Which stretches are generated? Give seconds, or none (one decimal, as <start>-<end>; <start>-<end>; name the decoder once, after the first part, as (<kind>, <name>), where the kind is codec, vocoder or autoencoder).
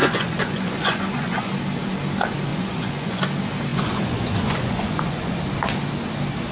0.0-1.5 (vocoder, Vocos); 2.5-3.2; 3.7-5.4